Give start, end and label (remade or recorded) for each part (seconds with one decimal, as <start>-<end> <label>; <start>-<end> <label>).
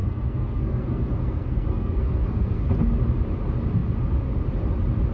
0.0-2.7 remade; 2.7-5.1 recorded